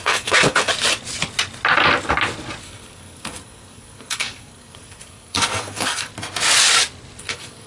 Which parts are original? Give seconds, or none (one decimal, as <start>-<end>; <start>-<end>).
0.7-2.6; 6.1-7.2